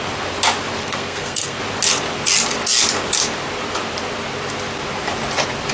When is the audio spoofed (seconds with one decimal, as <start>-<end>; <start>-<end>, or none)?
0.8-1.6